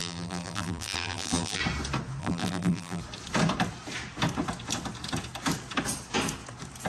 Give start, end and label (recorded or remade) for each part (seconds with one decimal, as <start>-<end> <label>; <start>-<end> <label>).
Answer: 0.0-1.6 remade; 1.6-2.2 recorded; 2.2-3.0 remade; 3.0-6.9 recorded